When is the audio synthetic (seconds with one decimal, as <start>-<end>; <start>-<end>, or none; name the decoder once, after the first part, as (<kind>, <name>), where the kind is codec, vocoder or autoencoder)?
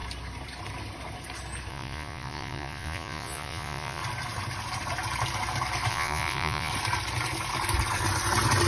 1.7-4.0 (vocoder, Vocos); 5.9-6.7